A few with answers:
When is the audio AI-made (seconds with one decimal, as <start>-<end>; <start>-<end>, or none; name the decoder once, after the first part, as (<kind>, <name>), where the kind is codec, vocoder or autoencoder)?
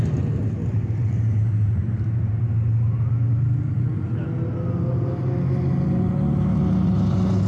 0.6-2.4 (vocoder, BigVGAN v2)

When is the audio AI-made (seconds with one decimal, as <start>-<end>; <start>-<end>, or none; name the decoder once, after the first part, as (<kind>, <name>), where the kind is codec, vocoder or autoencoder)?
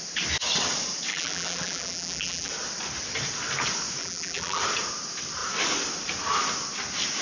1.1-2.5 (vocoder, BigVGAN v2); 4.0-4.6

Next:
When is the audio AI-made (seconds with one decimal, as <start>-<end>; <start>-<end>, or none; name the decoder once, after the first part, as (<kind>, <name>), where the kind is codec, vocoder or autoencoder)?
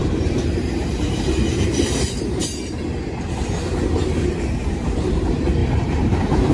0.0-2.4 (vocoder, BigVGAN v2); 5.1-6.5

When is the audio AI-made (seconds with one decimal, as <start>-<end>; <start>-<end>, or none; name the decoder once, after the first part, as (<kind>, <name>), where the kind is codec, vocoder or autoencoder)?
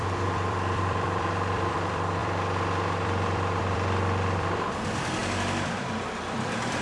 0.0-6.8 (vocoder, BigVGAN v2)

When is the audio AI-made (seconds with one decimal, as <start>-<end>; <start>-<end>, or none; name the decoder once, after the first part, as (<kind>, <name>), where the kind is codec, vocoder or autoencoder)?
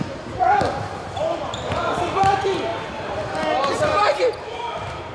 0.0-5.1 (vocoder, BigVGAN v2)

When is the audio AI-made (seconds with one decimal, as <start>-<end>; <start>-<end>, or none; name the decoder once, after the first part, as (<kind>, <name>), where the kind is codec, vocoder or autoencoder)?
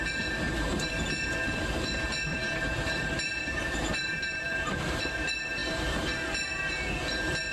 2.3-5.0 (vocoder, BigVGAN v2)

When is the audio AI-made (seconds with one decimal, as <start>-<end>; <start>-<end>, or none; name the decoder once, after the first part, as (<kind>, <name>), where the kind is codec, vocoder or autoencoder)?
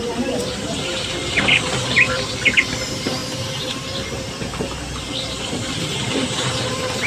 0.0-1.2 (vocoder, BigVGAN v2); 2.8-7.1